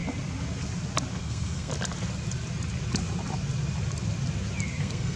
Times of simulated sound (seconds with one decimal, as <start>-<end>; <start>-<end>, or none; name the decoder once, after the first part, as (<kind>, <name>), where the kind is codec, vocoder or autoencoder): 1.1-1.7 (codec, SNAC); 4.8-5.2